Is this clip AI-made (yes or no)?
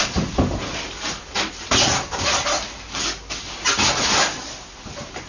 no